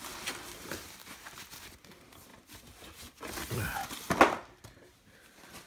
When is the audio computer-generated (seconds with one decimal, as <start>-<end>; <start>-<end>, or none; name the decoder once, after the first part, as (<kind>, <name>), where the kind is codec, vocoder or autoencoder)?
none